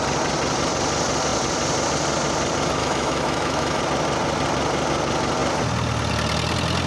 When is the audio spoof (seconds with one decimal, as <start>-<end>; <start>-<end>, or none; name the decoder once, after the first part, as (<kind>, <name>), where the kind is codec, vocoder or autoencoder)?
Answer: 2.8-3.8 (autoencoder, DAC-VAE)